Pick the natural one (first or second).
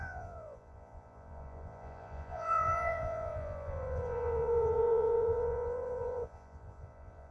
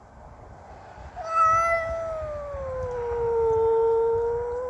second